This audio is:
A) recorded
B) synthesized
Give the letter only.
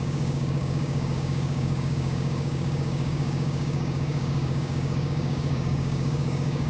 B